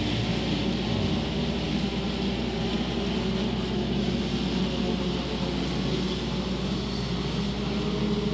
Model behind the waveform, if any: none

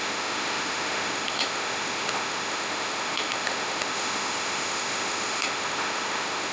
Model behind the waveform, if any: autoencoder, DAC-VAE